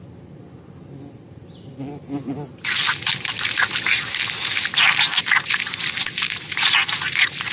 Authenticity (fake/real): real